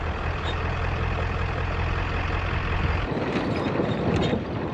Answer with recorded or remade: recorded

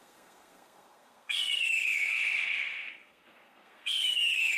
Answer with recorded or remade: remade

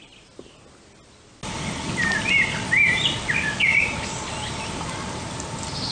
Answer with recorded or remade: recorded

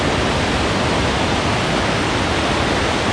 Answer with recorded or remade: recorded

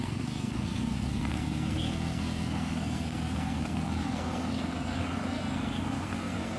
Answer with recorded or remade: remade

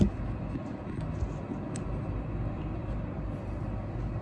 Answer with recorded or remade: recorded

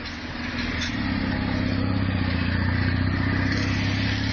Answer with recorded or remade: recorded